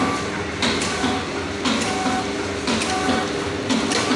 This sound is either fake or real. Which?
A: real